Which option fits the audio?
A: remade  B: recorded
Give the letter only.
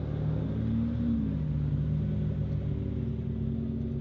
B